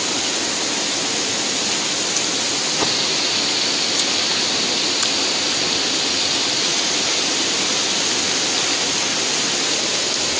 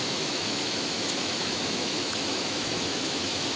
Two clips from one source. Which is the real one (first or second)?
first